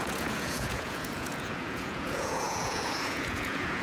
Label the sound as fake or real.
fake